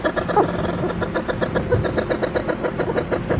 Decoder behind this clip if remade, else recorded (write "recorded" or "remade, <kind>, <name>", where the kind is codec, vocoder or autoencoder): recorded